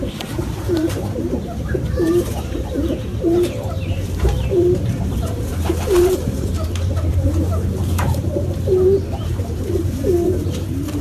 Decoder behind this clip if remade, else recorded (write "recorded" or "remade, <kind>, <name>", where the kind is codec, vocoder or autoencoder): remade, vocoder, BigVGAN v2